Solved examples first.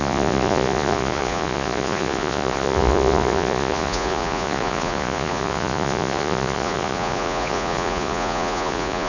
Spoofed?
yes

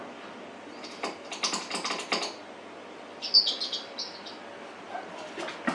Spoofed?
no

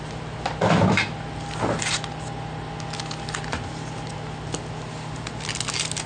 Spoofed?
no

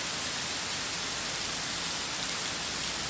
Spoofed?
no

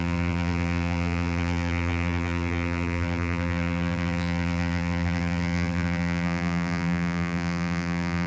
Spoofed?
yes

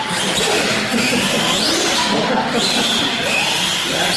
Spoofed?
no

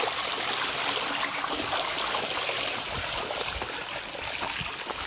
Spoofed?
no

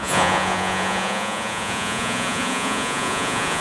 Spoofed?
yes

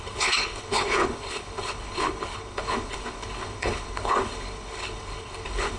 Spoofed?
yes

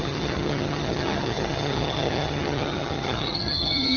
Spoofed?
yes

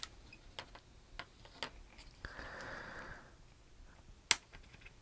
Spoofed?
no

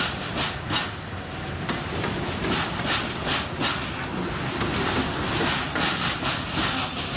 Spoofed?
no